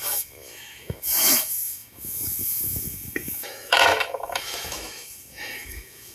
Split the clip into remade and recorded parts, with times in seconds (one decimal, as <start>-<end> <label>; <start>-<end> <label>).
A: 0.0-6.1 remade